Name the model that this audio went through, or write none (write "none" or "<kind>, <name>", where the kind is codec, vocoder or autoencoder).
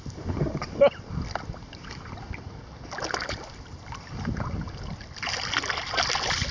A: none